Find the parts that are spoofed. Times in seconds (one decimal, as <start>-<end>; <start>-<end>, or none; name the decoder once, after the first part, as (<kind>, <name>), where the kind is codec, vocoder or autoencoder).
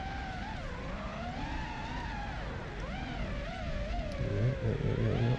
none